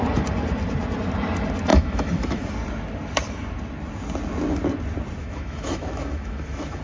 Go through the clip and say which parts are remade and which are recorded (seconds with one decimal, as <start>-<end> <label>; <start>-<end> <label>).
0.0-1.7 recorded; 1.7-2.4 remade; 2.4-5.2 recorded; 5.2-6.8 remade